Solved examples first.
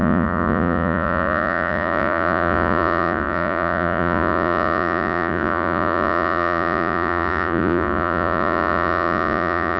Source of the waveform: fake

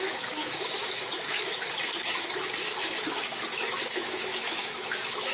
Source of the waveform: fake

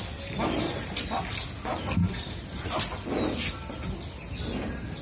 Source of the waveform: real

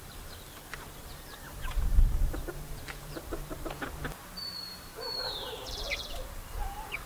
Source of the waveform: fake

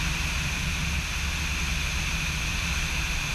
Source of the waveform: real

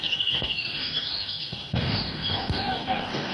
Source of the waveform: fake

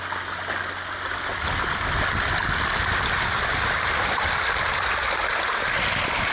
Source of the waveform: real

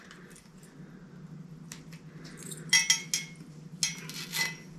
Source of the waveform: real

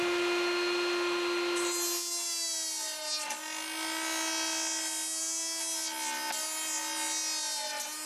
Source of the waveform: real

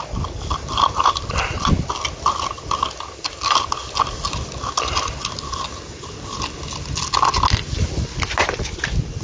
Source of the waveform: real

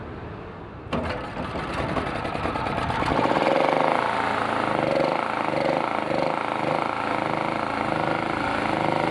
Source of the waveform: real